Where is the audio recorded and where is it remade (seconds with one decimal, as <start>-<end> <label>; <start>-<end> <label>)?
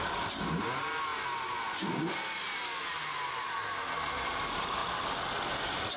0.0-6.0 recorded